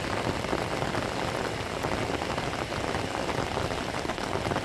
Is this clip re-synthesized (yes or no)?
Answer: no